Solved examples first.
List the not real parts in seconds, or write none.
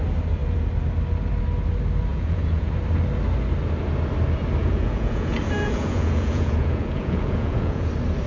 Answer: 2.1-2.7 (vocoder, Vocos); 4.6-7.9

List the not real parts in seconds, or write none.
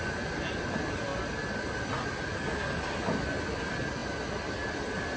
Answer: none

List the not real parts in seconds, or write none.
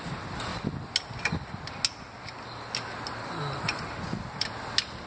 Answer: none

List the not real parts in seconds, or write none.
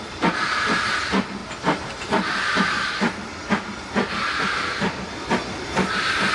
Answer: none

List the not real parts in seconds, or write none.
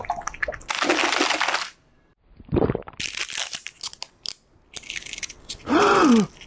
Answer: none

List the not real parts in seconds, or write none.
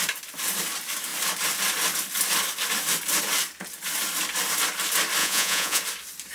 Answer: 5.2-5.8 (vocoder, Vocos)